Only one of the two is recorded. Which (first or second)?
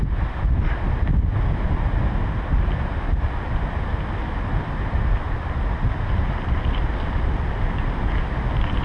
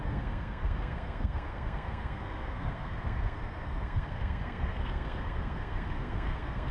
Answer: first